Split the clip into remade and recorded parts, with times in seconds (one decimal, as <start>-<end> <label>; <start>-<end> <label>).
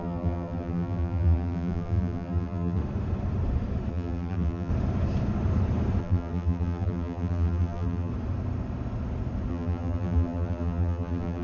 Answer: 0.0-2.8 remade; 2.8-3.9 recorded; 3.9-4.7 remade; 4.7-6.0 recorded; 6.0-8.1 remade; 8.1-9.5 recorded; 9.5-11.4 remade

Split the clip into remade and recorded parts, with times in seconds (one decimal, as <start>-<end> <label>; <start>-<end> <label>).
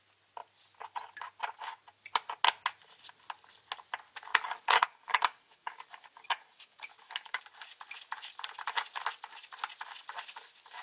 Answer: 0.0-4.3 recorded; 4.3-7.4 remade; 7.4-10.8 recorded